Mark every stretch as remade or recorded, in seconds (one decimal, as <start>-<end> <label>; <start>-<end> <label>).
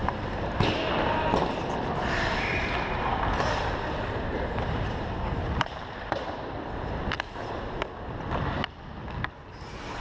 0.0-0.9 remade; 0.9-2.5 recorded; 2.5-6.7 remade; 6.7-10.0 recorded